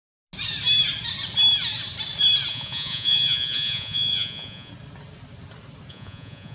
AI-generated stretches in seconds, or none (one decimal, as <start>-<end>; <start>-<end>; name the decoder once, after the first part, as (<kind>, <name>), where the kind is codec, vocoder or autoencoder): 2.5-4.7 (vocoder, Vocos); 5.9-6.5